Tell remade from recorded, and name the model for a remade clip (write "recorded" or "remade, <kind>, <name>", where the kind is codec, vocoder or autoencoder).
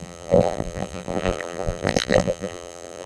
remade, vocoder, BigVGAN v2